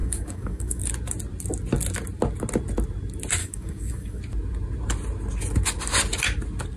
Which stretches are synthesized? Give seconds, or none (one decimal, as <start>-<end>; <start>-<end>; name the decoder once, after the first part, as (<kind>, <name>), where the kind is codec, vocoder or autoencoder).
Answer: 0.0-0.9 (codec, DAC); 3.4-4.2